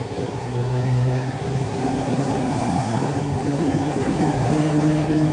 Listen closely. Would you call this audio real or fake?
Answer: fake